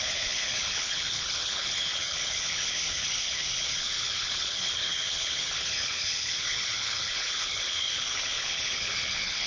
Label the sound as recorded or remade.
remade